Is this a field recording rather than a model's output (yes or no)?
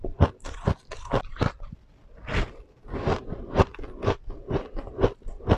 yes